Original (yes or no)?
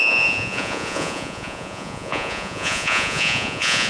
no